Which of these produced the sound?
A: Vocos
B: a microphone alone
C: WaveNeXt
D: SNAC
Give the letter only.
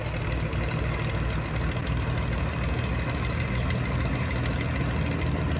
B